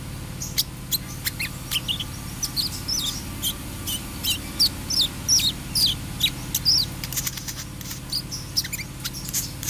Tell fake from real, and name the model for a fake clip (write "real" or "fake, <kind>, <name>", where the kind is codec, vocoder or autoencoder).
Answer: real